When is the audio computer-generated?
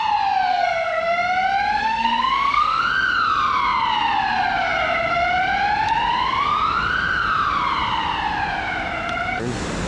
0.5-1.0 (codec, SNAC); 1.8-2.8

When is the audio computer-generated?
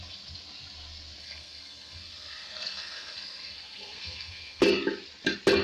1.2-4.6 (codec, SNAC)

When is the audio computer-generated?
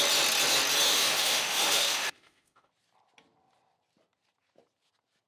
0.9-2.7 (autoencoder, DAC-VAE)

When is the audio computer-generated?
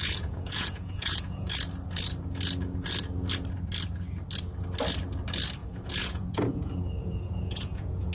0.0-1.5 (vocoder, Vocos); 5.6-6.6; 7.0-8.1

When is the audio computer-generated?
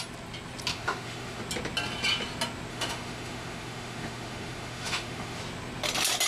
0.7-1.4 (autoencoder, DAC-VAE); 2.7-5.4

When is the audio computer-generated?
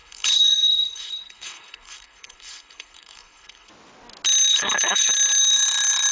0.0-3.7 (codec, HILCodec); 4.5-5.1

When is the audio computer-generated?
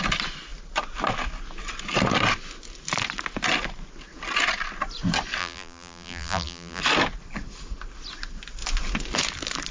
5.4-6.8 (vocoder, BigVGAN v2)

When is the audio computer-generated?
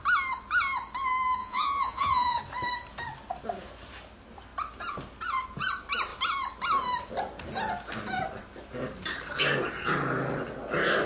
1.4-2.4 (vocoder, Vocos)